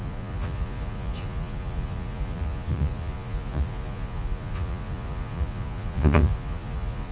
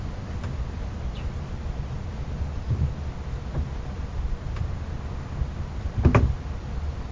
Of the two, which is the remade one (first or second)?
first